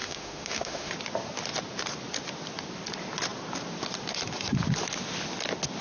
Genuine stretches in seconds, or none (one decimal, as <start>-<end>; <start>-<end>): 0.9-5.8